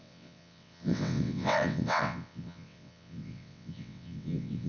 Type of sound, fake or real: fake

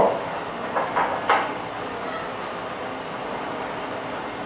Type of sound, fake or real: real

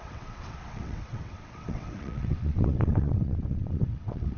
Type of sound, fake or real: fake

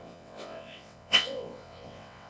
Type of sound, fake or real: fake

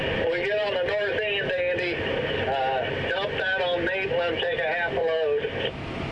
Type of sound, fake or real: real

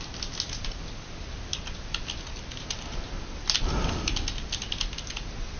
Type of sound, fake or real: real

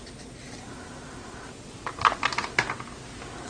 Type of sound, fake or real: real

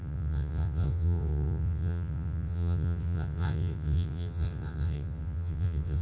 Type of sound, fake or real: fake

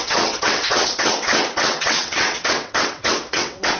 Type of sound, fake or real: fake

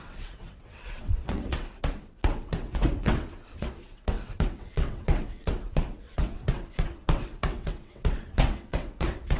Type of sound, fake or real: fake